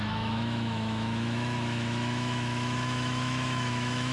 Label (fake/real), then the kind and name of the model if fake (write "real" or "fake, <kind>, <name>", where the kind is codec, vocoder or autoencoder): fake, autoencoder, DAC-VAE